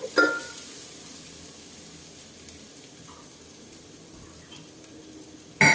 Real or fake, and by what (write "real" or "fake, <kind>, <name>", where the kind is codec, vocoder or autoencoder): real